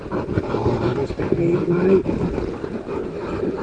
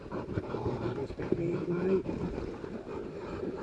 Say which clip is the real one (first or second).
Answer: first